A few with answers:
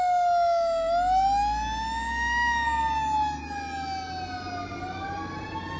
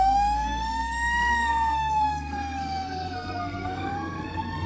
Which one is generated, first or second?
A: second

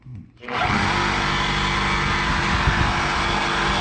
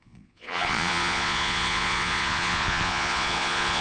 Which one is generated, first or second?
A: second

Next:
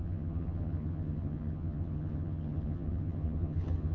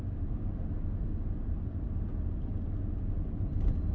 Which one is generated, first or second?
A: first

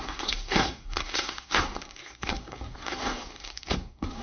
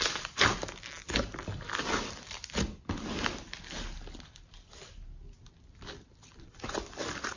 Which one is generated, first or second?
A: first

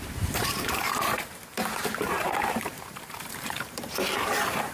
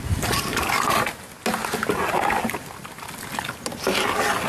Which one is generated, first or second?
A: first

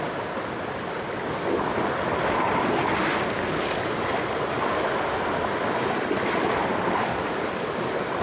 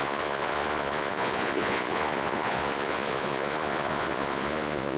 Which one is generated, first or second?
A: second